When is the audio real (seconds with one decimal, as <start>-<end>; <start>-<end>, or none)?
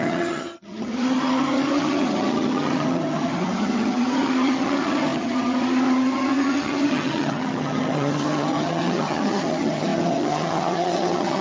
none